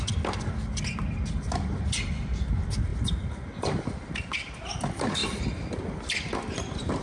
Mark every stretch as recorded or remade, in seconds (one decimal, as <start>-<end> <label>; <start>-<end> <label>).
0.0-7.0 recorded